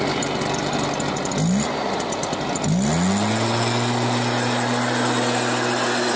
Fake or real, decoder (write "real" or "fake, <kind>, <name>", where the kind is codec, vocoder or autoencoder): real